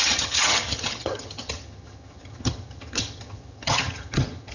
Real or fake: fake